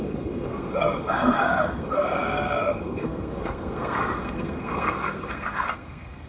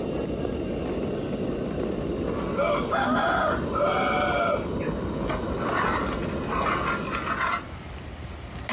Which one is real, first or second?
second